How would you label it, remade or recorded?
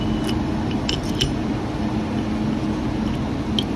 recorded